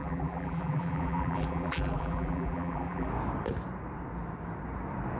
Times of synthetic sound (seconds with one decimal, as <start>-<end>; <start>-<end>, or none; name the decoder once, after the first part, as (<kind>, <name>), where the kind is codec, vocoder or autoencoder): 0.0-3.1 (vocoder, BigVGAN v2)